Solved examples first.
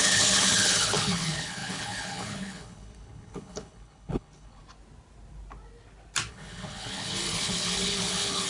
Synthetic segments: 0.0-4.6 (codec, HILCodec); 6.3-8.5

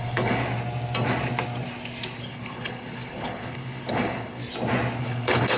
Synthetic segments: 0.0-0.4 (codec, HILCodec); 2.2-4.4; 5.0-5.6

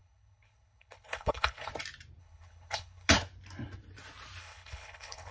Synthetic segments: 0.0-1.7 (codec, HILCodec); 2.2-3.1; 4.4-5.3

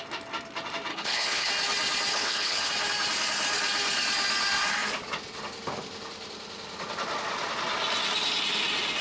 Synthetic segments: 0.9-1.5 (codec, HILCodec); 2.1-2.7

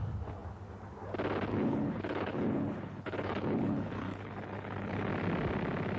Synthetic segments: 1.5-5.1 (codec, HILCodec)

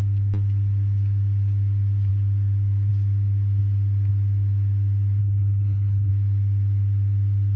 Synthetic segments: 5.2-6.1 (codec, HILCodec)